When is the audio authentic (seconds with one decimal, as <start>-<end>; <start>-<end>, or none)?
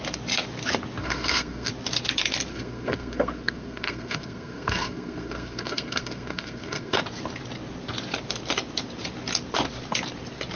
0.0-1.0; 1.7-2.5; 7.0-10.6